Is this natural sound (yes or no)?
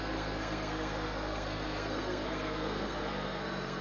no